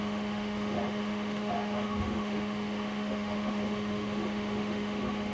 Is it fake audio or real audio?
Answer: fake